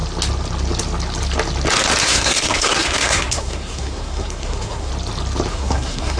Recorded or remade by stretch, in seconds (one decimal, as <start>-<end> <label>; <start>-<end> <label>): 0.0-2.0 recorded; 2.0-4.9 remade; 4.9-5.5 recorded; 5.5-6.2 remade

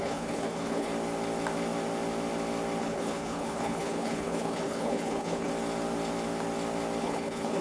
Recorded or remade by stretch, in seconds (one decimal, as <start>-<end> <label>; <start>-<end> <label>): 0.0-0.9 remade; 0.9-2.8 recorded; 2.8-5.5 remade; 5.5-7.0 recorded; 7.0-7.6 remade

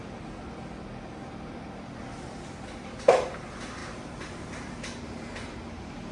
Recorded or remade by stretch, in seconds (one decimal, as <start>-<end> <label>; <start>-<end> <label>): 0.0-3.8 recorded; 3.8-6.1 remade